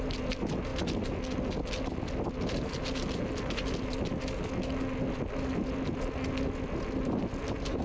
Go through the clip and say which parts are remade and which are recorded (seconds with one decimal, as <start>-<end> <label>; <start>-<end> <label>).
0.0-7.8 recorded